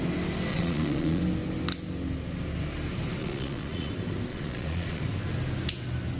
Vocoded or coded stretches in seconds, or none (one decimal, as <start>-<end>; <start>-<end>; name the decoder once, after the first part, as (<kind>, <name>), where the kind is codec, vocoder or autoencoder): 0.5-1.2 (vocoder, Vocos); 3.2-3.9; 4.3-5.0